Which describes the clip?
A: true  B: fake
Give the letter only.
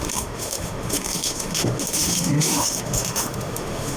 B